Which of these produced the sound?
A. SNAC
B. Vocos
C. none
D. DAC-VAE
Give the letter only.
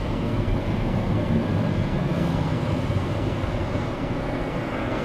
A